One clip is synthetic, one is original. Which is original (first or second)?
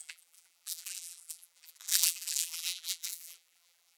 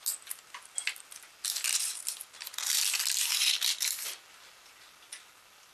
second